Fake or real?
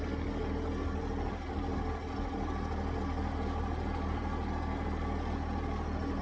real